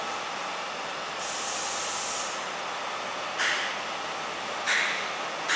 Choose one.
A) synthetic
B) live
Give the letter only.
B